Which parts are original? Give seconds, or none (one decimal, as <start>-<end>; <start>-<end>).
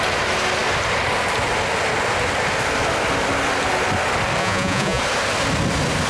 0.0-4.4; 5.0-6.1